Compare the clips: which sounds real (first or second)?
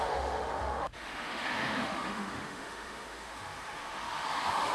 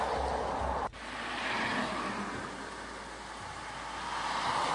second